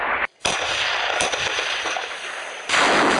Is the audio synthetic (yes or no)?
no